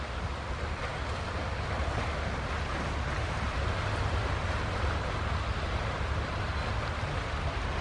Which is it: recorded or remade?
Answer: recorded